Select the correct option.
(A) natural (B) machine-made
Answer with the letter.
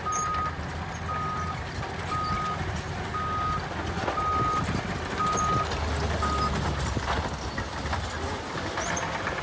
A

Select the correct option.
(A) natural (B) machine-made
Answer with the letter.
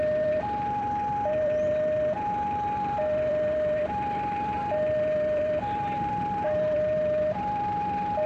B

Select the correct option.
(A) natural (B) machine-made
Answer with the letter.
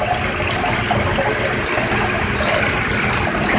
A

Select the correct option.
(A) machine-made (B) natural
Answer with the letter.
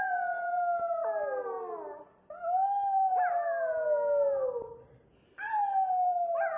B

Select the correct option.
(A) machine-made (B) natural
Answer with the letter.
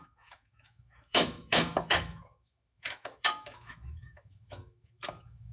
A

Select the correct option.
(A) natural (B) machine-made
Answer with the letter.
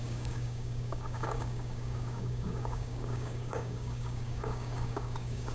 B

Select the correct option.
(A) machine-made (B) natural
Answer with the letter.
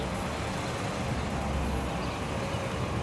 B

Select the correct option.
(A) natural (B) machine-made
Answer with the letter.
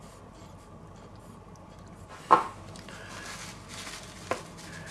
A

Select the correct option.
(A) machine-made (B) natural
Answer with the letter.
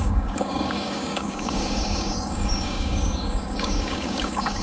A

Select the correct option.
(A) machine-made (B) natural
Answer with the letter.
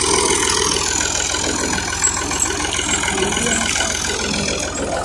B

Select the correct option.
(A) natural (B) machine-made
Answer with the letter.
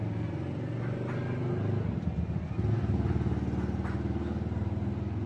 A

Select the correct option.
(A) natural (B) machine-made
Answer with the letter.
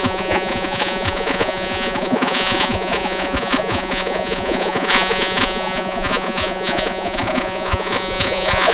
B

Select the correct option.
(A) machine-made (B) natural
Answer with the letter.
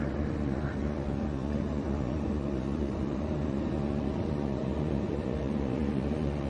A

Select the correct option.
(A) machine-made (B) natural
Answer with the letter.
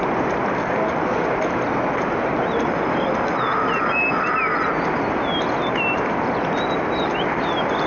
B